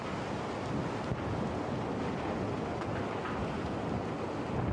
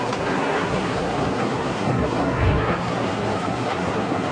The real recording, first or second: first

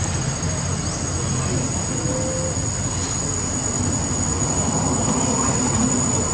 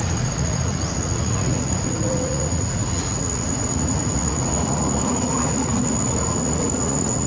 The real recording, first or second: first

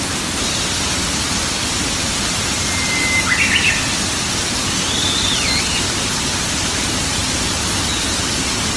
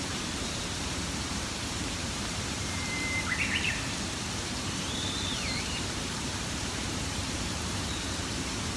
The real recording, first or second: first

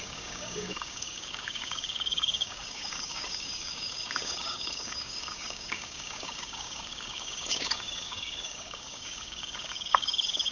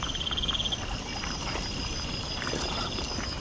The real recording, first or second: second